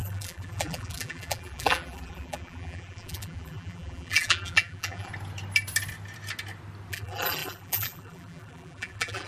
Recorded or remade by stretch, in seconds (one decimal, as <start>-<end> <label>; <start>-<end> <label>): 0.0-5.1 remade; 5.1-6.9 recorded; 6.9-9.3 remade